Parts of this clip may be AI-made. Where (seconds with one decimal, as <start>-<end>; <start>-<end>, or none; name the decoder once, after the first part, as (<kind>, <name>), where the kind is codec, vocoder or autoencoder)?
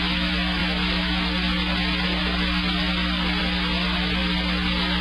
none